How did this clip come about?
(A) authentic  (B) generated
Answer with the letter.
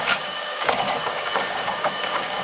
B